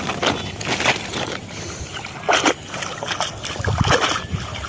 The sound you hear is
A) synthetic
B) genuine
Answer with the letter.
B